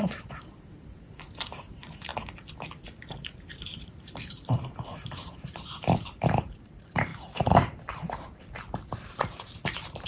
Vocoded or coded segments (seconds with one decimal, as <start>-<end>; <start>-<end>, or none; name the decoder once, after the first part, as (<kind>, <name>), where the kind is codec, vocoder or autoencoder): 0.0-2.1 (vocoder, BigVGAN v2); 3.1-7.1; 9.2-10.1